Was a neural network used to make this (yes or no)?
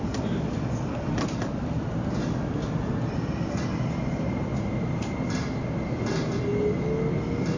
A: no